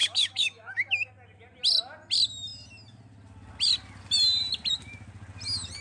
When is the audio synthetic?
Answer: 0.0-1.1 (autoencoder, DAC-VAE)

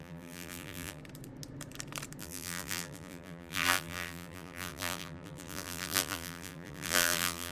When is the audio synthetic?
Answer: 0.0-1.0 (vocoder, BigVGAN v2); 2.2-7.5